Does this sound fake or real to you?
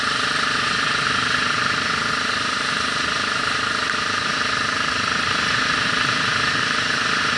fake